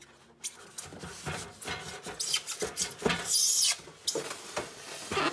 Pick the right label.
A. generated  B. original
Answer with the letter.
B